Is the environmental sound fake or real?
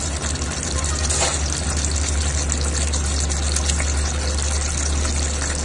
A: real